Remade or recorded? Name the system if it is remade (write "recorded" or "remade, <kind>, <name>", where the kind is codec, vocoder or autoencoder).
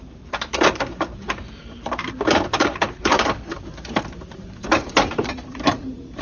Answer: remade, vocoder, BigVGAN v2